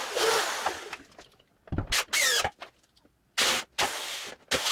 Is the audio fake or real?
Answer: real